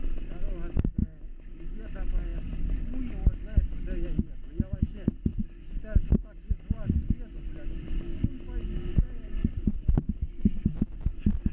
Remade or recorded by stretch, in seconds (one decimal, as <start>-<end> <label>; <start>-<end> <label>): 0.0-1.0 recorded; 1.0-1.6 remade; 1.6-11.5 recorded